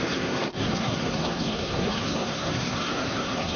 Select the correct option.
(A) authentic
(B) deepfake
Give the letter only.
B